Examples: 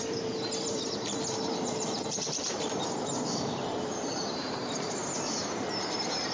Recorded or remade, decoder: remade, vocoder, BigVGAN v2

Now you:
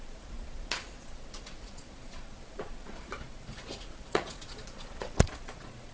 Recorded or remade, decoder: remade, vocoder, Vocos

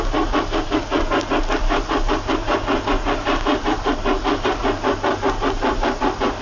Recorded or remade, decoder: recorded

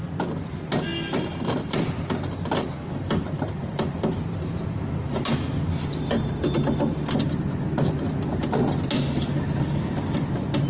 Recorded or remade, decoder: recorded